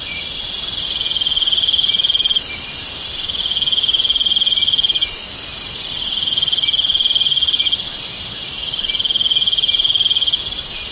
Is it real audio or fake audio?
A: real